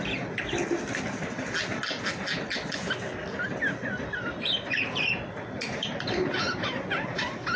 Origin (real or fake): real